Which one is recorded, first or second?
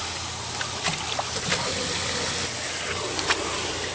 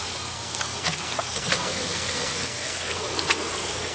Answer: first